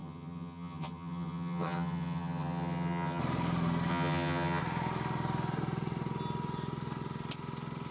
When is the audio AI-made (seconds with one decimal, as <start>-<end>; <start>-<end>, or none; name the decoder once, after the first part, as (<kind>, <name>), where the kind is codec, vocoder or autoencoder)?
0.0-3.2 (vocoder, HiFi-GAN); 3.9-4.6